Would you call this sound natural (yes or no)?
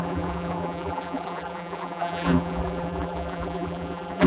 no